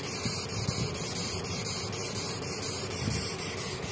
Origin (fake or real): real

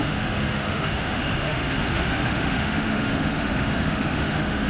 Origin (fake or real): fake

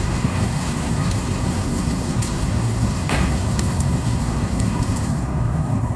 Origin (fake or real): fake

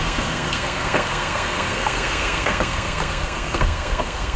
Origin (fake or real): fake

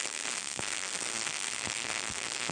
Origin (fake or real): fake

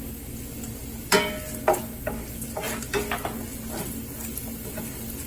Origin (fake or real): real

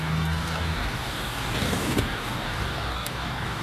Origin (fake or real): fake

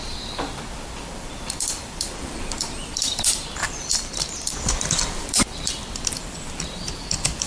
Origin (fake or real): fake